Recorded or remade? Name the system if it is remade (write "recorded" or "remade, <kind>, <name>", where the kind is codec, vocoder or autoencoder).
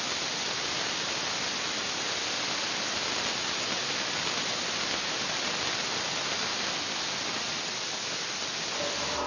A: recorded